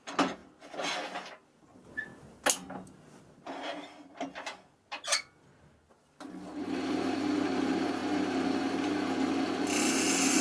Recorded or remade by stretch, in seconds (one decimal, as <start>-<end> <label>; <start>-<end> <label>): 0.0-10.4 recorded